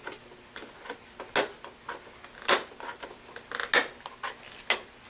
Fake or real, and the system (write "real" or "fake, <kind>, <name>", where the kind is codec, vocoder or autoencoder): real